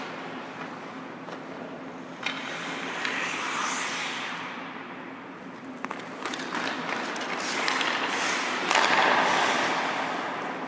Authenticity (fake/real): real